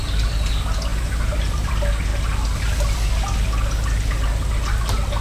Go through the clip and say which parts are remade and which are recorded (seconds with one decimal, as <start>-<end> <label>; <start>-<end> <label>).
0.0-0.9 recorded; 0.9-1.7 remade; 1.7-5.2 recorded